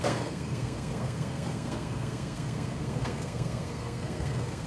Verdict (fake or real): fake